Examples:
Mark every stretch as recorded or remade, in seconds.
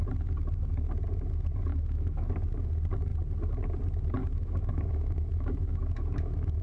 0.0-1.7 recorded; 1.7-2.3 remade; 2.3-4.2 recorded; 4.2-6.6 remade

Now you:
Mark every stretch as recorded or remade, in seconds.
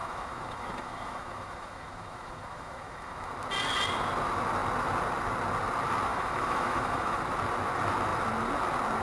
0.0-3.3 remade; 3.3-6.1 recorded; 6.1-7.2 remade; 7.2-9.0 recorded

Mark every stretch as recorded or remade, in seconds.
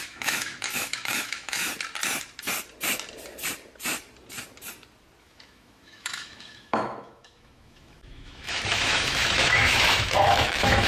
0.0-1.7 remade; 1.7-5.2 recorded; 5.2-10.9 remade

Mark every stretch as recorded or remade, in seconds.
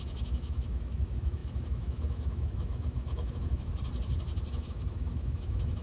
0.0-3.7 remade; 3.7-4.5 recorded; 4.5-5.8 remade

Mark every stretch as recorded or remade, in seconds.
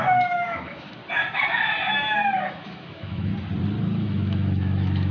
0.0-1.0 remade; 1.0-2.4 recorded; 2.4-3.3 remade; 3.3-3.8 recorded; 3.8-5.1 remade